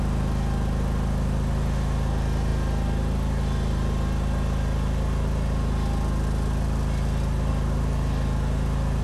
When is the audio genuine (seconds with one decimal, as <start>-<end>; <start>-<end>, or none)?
0.0-9.0